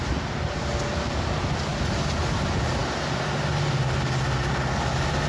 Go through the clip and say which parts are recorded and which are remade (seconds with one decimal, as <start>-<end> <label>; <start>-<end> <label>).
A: 0.0-5.3 recorded